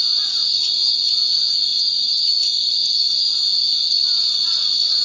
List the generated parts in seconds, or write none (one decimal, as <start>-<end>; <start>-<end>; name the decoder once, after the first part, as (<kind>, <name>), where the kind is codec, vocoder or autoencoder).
1.7-2.4 (vocoder, Vocos)